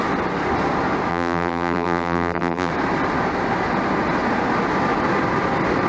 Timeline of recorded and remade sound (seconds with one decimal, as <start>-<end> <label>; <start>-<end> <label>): 0.0-1.1 recorded; 1.1-2.7 remade; 2.7-5.9 recorded